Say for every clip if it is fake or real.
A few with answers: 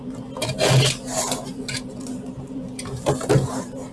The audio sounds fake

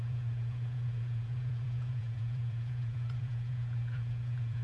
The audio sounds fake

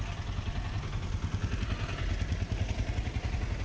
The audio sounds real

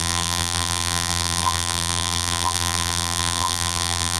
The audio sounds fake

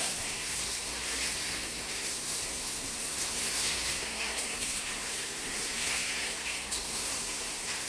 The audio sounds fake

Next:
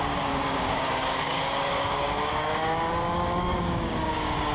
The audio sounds fake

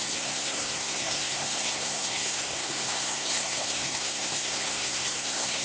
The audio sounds fake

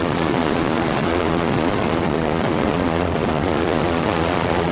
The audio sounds fake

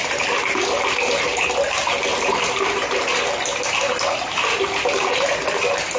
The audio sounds real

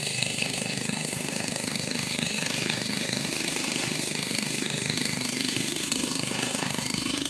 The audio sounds fake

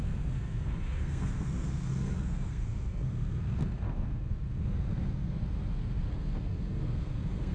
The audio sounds fake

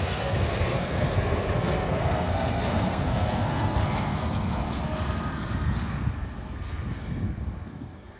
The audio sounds fake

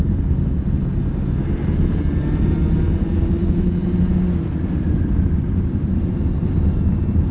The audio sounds real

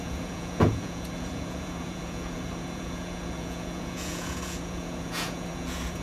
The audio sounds fake